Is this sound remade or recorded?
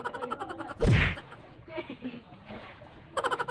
remade